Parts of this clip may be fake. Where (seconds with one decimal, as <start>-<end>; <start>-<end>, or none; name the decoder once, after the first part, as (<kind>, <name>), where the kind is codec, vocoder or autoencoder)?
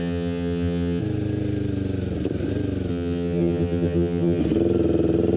0.0-1.0 (vocoder, HiFi-GAN); 2.9-4.4